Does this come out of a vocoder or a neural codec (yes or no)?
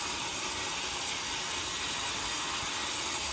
no